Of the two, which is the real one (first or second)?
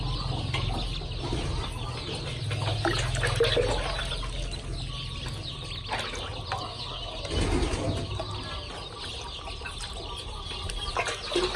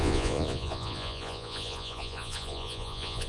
first